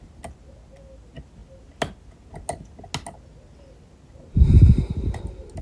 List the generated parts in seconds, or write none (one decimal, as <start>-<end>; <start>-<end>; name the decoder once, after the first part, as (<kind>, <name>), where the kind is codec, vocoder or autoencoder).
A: none